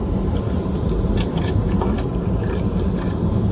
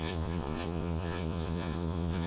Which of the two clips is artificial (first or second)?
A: second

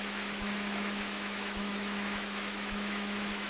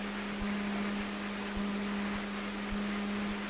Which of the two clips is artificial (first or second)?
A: first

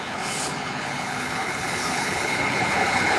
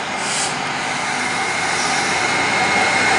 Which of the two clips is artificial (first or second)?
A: first